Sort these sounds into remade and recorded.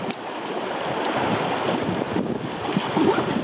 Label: recorded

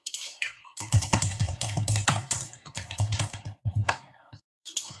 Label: remade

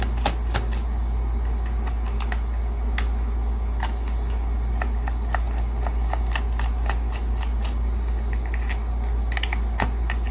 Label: recorded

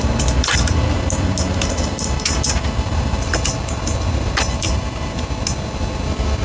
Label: recorded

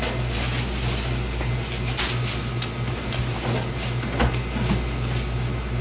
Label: recorded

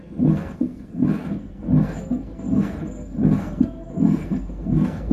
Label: remade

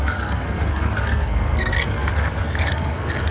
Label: remade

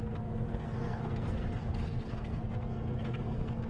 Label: remade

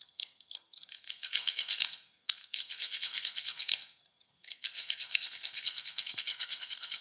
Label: remade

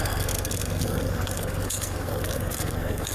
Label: remade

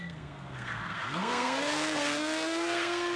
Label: remade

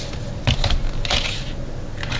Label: recorded